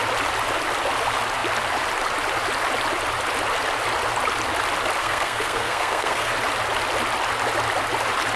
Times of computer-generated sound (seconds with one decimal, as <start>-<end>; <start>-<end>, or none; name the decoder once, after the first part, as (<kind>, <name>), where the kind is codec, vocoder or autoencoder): 5.0-6.3 (codec, SNAC)